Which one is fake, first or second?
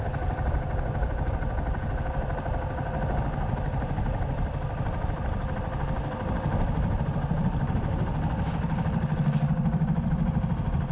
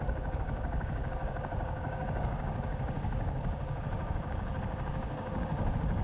second